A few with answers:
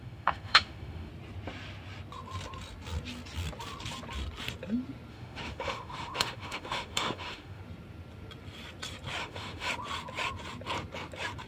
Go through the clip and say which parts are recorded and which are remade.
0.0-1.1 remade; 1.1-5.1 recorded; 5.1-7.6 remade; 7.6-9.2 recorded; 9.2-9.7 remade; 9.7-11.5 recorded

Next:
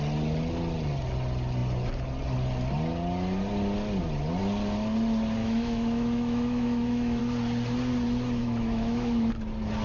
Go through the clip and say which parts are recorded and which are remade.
0.0-5.4 recorded; 5.4-7.2 remade; 7.2-8.4 recorded; 8.4-9.3 remade; 9.3-9.8 recorded

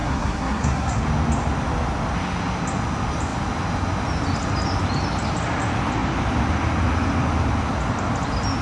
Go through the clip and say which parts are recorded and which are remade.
0.0-1.0 remade; 1.0-8.6 recorded

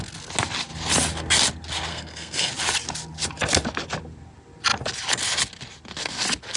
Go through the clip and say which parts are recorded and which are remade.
0.0-1.9 recorded; 1.9-2.5 remade; 2.5-6.6 recorded

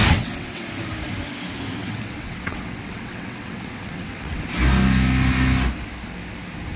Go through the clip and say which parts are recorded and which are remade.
0.0-0.6 remade; 0.6-1.8 recorded; 1.8-4.4 remade; 4.4-6.8 recorded

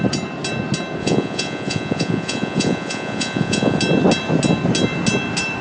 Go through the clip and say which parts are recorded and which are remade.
0.0-1.0 recorded; 1.0-3.8 remade; 3.8-5.6 recorded

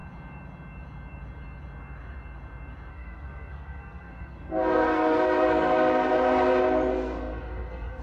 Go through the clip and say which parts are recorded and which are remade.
0.0-2.9 recorded; 2.9-6.1 remade; 6.1-6.9 recorded; 6.9-8.0 remade

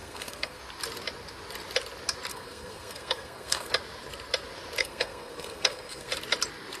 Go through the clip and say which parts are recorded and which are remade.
0.0-0.6 remade; 0.6-2.3 recorded; 2.3-3.7 remade; 3.7-4.8 recorded; 4.8-6.1 remade; 6.1-6.8 recorded